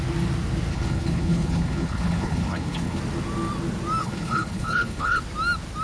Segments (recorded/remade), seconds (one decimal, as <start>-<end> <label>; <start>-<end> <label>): 0.0-0.7 recorded; 0.7-3.0 remade; 3.0-4.0 recorded; 4.0-5.2 remade; 5.2-5.8 recorded